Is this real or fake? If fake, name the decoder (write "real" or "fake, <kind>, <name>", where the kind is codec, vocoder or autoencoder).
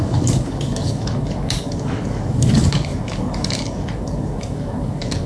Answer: fake, codec, DAC